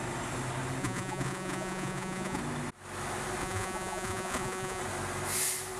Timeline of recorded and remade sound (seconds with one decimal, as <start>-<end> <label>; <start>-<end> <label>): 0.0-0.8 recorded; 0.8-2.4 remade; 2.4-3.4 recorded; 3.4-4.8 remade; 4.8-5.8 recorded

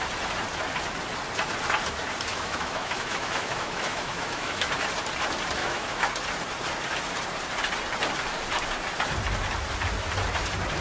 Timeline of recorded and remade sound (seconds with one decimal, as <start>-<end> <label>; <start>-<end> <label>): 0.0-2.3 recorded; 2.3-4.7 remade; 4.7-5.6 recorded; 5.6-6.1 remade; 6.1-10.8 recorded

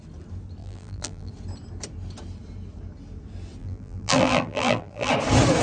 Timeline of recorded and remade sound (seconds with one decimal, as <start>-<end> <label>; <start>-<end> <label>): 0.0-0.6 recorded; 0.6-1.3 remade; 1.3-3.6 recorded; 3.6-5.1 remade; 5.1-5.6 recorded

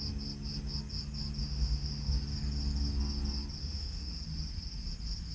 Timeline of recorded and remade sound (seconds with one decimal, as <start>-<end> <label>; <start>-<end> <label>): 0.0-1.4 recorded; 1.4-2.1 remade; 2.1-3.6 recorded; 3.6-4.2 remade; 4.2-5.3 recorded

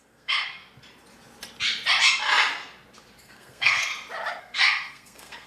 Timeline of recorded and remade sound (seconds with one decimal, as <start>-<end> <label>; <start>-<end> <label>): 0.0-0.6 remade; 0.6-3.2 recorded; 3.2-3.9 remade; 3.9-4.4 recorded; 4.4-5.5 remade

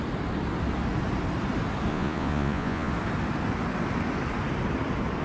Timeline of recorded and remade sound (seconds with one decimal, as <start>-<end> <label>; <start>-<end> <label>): 0.0-1.9 recorded; 1.9-2.9 remade; 2.9-5.2 recorded

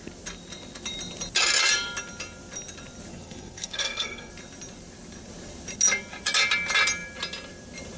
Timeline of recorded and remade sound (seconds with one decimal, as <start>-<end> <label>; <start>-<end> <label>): 0.0-3.1 recorded; 3.1-4.3 remade; 4.3-8.0 recorded